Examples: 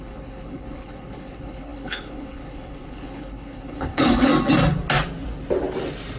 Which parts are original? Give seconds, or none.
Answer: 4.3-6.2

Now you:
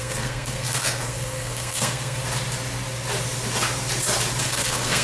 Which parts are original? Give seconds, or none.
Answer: 2.2-4.4

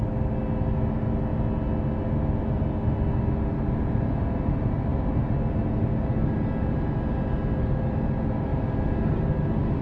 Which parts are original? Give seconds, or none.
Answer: 0.0-9.8

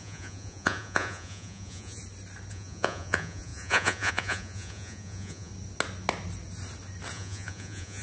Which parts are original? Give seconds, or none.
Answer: 2.0-2.5; 5.5-7.1

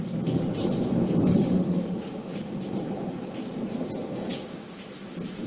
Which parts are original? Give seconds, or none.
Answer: 0.0-1.3; 2.5-5.5

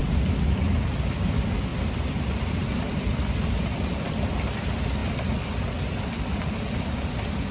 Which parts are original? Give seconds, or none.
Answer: 0.0-7.5